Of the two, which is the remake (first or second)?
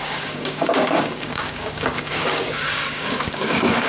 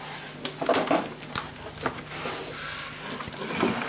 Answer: first